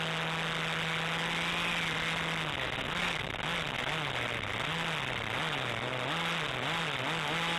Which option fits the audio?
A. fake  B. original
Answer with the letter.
B